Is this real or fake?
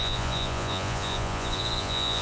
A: fake